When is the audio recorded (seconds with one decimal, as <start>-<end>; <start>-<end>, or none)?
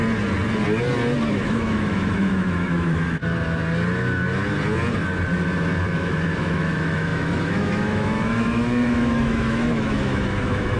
0.0-1.3; 3.2-6.0